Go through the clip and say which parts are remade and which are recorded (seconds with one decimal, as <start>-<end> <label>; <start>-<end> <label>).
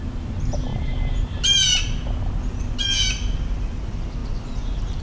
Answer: 0.0-5.0 recorded